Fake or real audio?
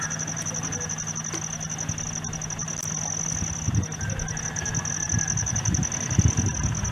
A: real